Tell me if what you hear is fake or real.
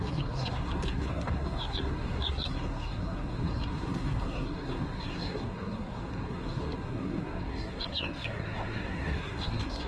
fake